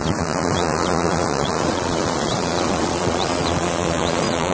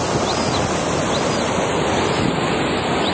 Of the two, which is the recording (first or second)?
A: second